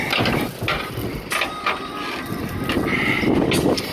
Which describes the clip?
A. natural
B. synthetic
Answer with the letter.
A